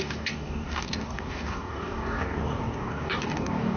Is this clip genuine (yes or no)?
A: no